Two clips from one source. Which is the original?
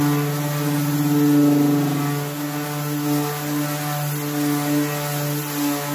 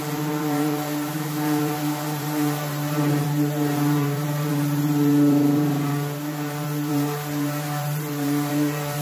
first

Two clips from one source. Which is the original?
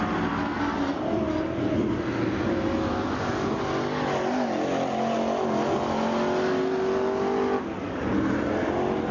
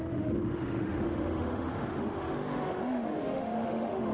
first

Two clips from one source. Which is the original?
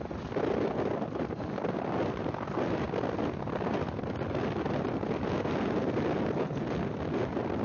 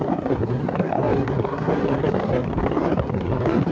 first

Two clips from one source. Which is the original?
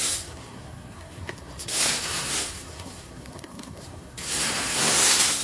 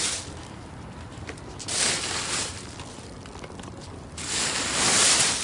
second